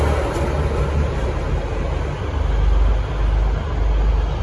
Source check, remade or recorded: recorded